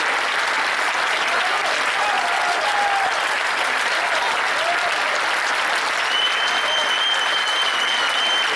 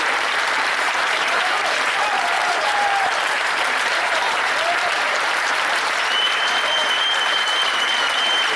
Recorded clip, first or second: first